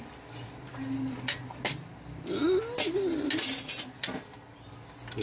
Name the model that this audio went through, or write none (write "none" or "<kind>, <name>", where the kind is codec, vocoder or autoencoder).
none